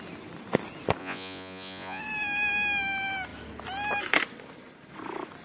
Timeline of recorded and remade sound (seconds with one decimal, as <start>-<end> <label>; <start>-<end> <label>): 0.0-1.0 recorded; 1.0-2.0 remade; 2.0-5.4 recorded